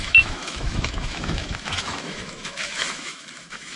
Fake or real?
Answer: fake